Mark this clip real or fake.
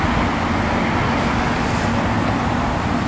real